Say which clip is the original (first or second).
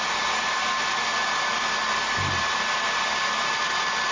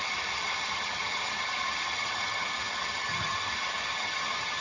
first